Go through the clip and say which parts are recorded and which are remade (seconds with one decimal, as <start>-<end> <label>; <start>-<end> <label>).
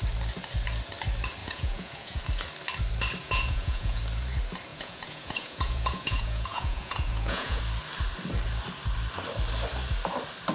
0.0-1.4 recorded; 1.4-2.2 remade; 2.2-3.2 recorded; 3.2-4.0 remade; 4.0-4.7 recorded; 4.7-7.6 remade; 7.6-10.5 recorded